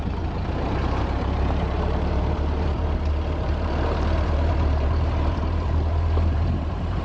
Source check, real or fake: fake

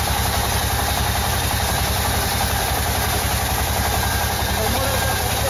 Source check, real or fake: fake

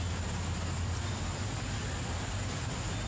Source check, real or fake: real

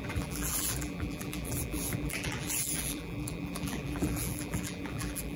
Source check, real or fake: fake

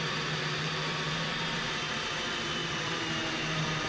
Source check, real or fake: fake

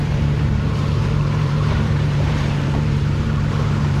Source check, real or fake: fake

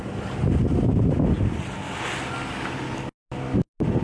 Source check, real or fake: real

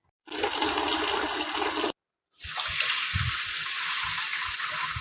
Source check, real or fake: real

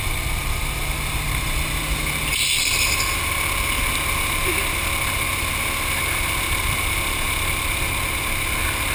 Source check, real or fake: real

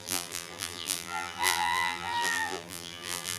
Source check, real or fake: fake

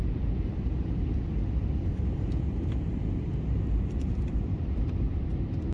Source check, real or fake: fake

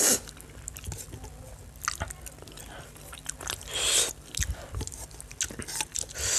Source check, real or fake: real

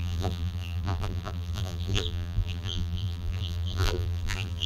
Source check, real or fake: fake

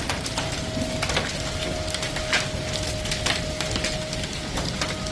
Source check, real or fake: real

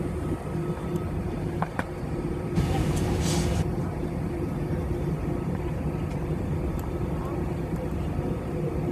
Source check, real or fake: fake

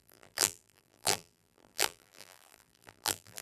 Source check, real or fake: fake